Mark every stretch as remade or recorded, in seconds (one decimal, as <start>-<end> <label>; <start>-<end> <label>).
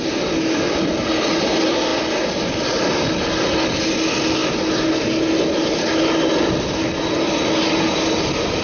0.0-8.6 recorded